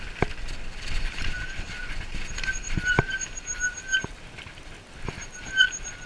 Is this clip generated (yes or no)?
no